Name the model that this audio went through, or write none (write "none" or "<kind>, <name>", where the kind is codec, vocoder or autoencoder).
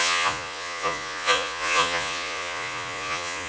vocoder, Vocos